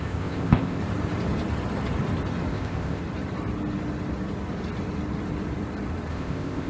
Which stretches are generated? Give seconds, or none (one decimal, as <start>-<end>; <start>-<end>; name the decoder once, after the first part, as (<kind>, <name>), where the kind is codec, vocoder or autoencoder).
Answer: 0.0-0.8 (codec, ZipCodec); 2.5-3.0; 6.1-6.7